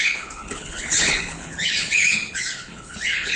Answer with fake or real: fake